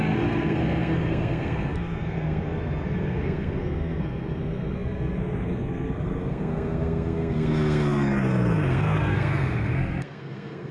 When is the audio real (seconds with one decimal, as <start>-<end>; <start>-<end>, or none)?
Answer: none